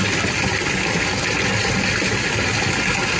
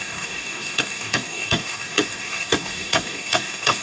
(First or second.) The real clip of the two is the first